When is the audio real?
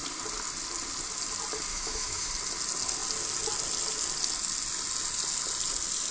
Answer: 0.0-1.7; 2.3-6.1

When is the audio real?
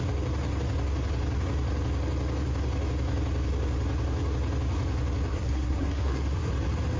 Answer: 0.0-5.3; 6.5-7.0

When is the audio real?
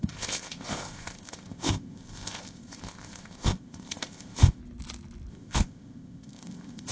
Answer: 4.6-5.3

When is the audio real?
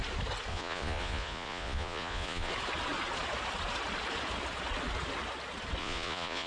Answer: 0.0-0.5; 2.5-5.8